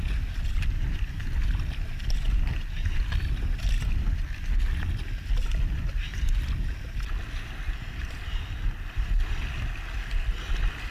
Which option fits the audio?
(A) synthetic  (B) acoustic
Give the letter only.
B